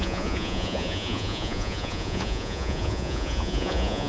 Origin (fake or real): fake